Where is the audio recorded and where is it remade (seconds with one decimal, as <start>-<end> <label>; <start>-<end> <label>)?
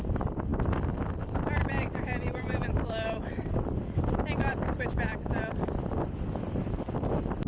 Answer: 0.0-1.6 recorded; 1.6-3.5 remade; 3.5-4.5 recorded; 4.5-7.1 remade; 7.1-7.5 recorded